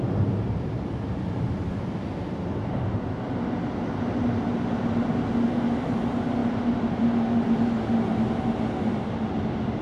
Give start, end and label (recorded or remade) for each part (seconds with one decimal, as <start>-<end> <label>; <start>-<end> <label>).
0.0-9.8 recorded